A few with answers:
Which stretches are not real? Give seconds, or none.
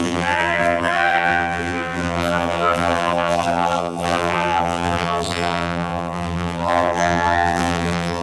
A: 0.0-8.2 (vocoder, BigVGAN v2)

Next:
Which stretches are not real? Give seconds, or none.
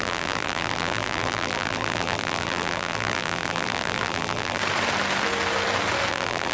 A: 0.0-4.6 (vocoder, BigVGAN v2); 6.1-6.5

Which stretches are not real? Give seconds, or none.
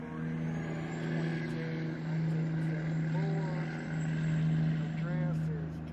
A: none